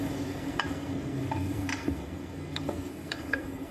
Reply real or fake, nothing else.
fake